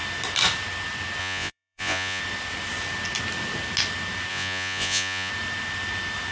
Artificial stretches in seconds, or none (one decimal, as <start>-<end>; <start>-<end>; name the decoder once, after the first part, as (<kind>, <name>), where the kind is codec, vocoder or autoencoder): 1.2-2.2 (vocoder, Vocos); 4.3-5.3